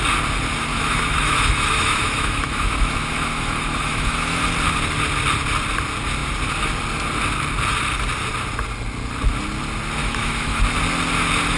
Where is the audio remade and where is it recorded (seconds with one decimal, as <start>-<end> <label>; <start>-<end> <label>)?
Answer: 0.0-0.7 recorded; 0.7-4.4 remade; 4.4-10.0 recorded; 10.0-10.6 remade; 10.6-11.6 recorded